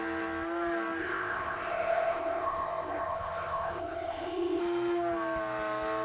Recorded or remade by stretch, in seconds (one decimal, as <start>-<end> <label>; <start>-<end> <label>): 0.0-1.0 recorded; 1.0-4.6 remade; 4.6-6.0 recorded

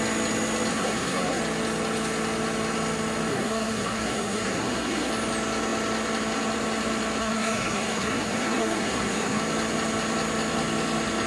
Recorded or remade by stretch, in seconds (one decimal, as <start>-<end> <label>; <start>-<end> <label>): 0.0-0.7 recorded; 0.7-1.4 remade; 1.4-3.3 recorded; 3.3-5.1 remade; 5.1-7.2 recorded; 7.2-9.4 remade; 9.4-11.3 recorded

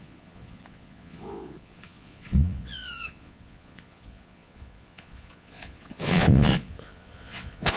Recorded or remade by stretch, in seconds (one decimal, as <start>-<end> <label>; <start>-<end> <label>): 0.0-7.8 remade

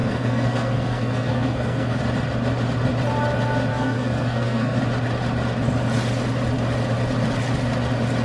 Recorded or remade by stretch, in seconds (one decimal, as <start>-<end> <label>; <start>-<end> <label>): 0.0-2.0 remade; 2.0-3.7 recorded; 3.7-4.8 remade; 4.8-8.2 recorded